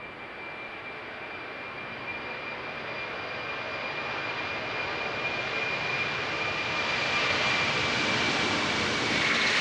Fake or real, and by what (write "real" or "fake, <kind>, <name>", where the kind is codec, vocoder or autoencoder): real